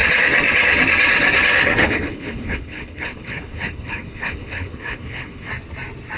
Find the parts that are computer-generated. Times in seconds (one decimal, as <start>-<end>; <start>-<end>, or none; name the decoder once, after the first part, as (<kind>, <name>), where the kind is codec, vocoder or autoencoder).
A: 1.8-5.5 (codec, HILCodec)